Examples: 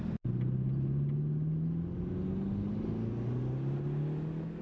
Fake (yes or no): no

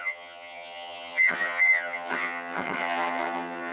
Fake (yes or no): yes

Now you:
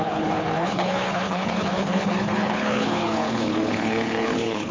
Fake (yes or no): yes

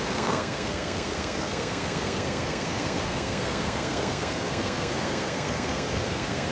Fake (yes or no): yes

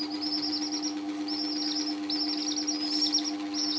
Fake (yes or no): no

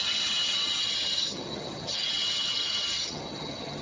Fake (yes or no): yes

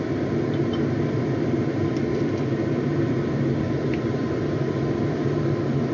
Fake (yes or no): no